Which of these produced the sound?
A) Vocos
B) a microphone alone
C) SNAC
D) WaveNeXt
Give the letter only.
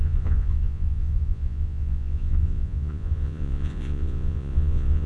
A